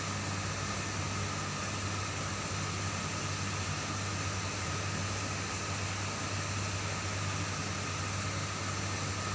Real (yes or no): yes